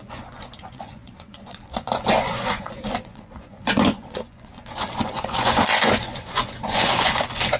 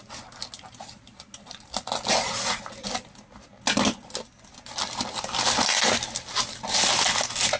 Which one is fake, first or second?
first